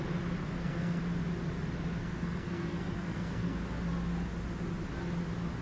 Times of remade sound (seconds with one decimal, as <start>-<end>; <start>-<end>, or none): 0.4-1.0; 2.0-3.6